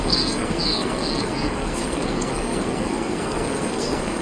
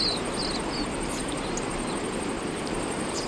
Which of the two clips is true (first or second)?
second